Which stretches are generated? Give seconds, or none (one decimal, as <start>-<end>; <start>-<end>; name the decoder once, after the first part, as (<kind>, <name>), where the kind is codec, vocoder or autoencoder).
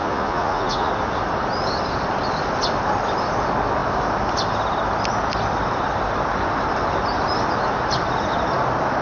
0.0-0.9 (vocoder, Vocos)